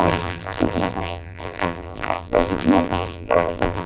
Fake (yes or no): yes